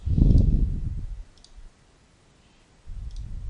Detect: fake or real real